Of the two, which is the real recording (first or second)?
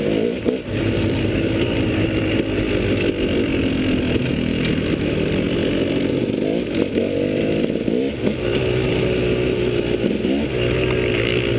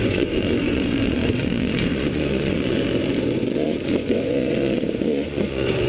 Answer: first